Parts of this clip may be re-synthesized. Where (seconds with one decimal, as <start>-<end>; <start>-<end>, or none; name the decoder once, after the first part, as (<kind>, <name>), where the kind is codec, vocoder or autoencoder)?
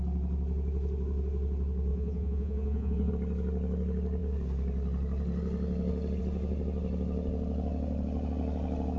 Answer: 1.9-3.1 (vocoder, Vocos)